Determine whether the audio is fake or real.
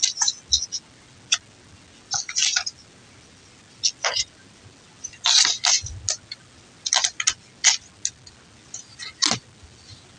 real